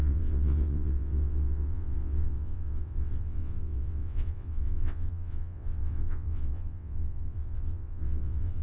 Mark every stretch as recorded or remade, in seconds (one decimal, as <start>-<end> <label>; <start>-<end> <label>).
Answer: 0.0-8.6 remade

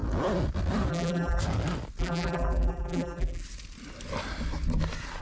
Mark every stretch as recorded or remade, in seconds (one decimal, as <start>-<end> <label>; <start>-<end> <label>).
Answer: 0.0-0.9 recorded; 0.9-1.4 remade; 1.4-2.0 recorded; 2.0-3.4 remade; 3.4-5.2 recorded